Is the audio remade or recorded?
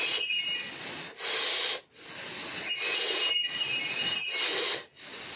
recorded